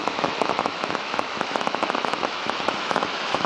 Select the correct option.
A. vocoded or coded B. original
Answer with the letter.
A